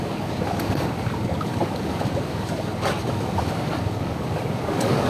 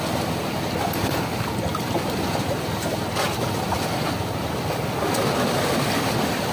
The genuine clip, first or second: second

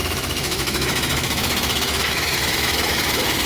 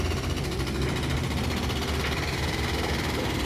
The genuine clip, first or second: second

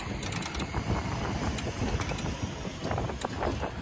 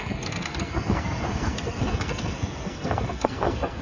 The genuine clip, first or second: first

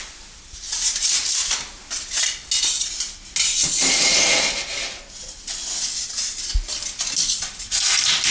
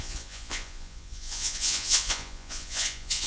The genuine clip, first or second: first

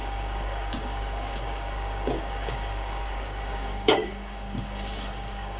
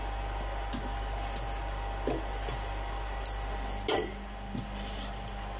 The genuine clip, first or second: second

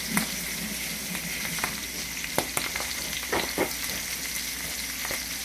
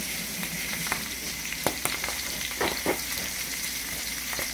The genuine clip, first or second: first